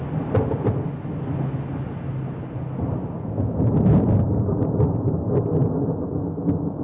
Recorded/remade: recorded